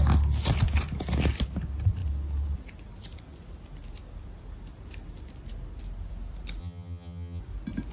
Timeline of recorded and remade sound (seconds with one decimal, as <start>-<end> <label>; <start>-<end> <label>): 0.0-6.6 recorded; 6.6-7.4 remade; 7.4-7.9 recorded